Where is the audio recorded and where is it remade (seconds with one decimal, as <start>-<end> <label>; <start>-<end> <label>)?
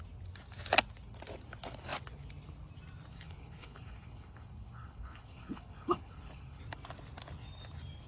0.0-3.1 recorded; 3.1-6.6 remade; 6.6-8.1 recorded